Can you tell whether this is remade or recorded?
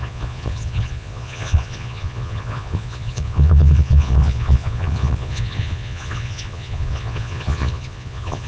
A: remade